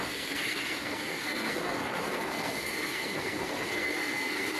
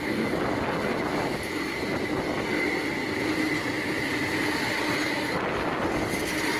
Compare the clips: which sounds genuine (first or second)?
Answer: second